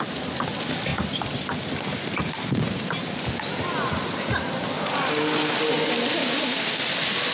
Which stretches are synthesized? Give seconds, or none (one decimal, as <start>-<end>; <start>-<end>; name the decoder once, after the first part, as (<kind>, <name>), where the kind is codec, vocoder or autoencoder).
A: 6.2-6.8 (codec, DAC)